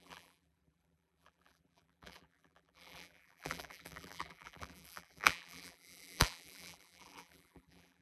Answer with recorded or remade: remade